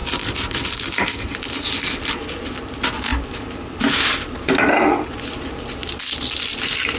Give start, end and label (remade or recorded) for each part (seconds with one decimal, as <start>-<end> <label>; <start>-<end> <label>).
0.0-7.0 recorded